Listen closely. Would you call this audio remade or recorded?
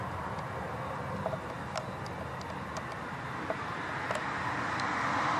recorded